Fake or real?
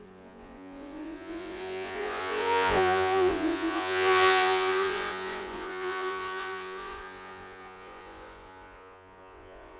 fake